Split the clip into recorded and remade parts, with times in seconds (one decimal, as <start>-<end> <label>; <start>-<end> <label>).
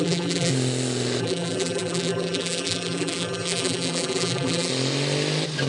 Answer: 0.0-0.5 remade; 0.5-1.2 recorded; 1.2-4.7 remade; 4.7-5.7 recorded